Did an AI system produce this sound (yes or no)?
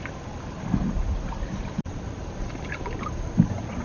no